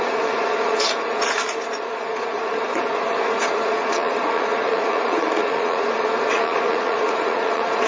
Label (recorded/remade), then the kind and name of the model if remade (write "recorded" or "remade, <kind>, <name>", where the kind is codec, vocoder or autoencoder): remade, vocoder, Vocos